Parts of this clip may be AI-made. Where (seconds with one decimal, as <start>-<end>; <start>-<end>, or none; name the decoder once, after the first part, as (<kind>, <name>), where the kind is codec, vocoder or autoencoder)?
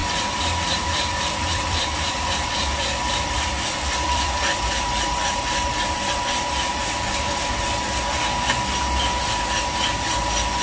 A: 0.0-4.9 (vocoder, BigVGAN v2)